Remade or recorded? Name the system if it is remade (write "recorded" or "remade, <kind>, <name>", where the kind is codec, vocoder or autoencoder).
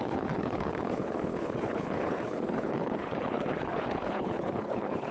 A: remade, codec, HILCodec